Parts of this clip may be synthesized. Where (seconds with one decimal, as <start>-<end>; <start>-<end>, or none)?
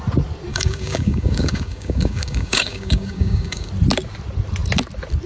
0.5-3.7